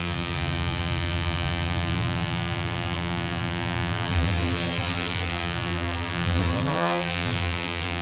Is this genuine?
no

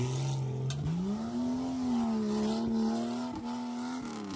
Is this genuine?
yes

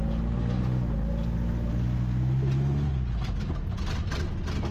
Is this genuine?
yes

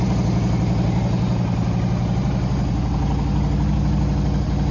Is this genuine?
yes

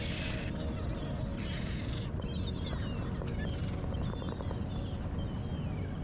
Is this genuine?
yes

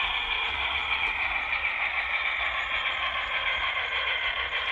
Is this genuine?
no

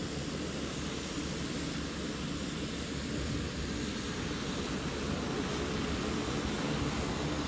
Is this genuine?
yes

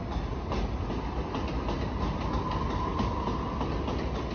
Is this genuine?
yes